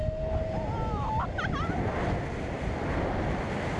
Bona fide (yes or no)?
yes